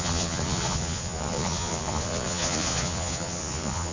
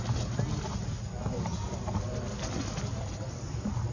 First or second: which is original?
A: second